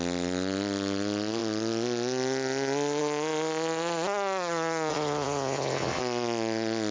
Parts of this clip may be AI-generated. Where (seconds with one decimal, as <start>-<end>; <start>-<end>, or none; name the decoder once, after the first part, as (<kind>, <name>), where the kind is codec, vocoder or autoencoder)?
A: 4.9-6.0 (vocoder, HiFi-GAN)